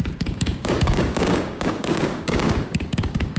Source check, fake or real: fake